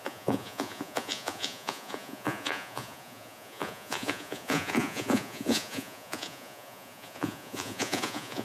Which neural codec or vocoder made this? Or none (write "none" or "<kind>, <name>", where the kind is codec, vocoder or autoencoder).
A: vocoder, Vocos